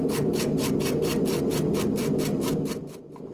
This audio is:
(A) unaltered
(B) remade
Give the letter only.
A